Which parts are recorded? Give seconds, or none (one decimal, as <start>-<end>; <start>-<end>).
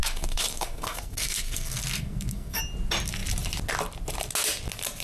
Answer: 2.6-5.0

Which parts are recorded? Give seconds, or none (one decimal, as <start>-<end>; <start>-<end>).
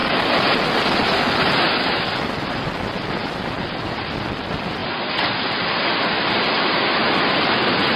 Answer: 0.0-8.0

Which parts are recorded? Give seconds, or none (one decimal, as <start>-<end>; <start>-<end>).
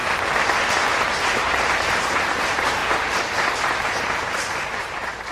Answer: 0.0-1.0; 2.8-3.7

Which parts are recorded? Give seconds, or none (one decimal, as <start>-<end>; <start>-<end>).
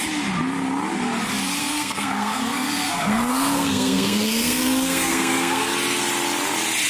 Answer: 0.0-1.6; 5.7-6.9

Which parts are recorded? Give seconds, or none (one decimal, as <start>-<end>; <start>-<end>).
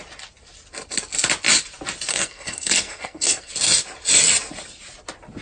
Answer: 0.0-2.1; 3.5-5.4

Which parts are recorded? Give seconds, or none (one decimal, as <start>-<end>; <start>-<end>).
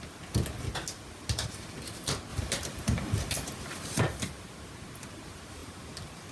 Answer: 0.0-2.3; 4.0-6.3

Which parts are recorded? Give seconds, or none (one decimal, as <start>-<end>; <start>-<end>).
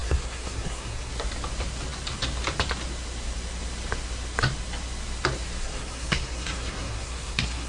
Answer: 1.1-5.6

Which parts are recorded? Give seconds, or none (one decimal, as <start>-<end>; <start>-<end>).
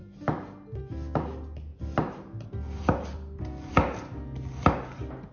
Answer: 0.0-5.3